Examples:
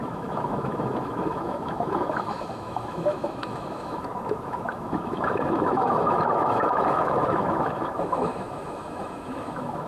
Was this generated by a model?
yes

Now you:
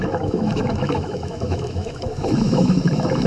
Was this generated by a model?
yes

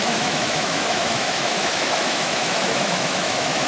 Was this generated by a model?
yes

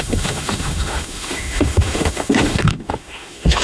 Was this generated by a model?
yes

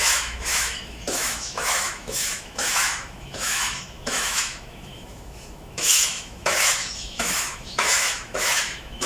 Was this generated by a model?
yes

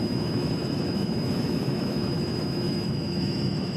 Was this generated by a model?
yes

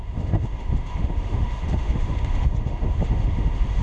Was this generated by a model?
yes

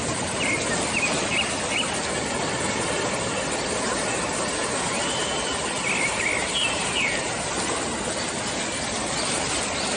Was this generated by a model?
no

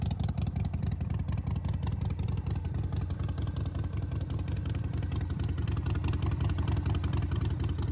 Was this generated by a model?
no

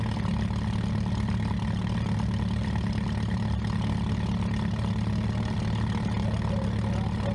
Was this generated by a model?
no